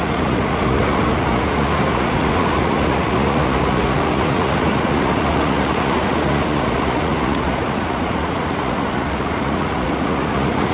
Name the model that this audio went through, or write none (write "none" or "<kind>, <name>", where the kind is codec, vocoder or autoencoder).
vocoder, Vocos